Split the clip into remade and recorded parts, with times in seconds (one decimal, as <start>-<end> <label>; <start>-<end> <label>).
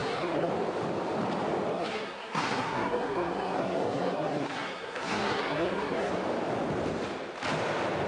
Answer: 0.0-0.5 remade; 0.5-1.7 recorded; 1.7-6.1 remade; 6.1-8.1 recorded